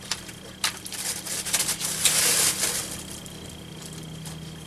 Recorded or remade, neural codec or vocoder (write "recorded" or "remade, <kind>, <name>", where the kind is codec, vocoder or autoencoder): recorded